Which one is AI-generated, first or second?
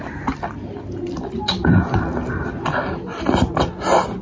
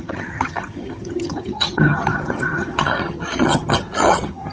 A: second